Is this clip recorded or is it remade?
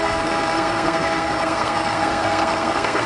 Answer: remade